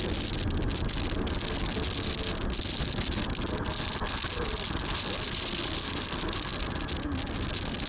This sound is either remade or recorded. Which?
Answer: recorded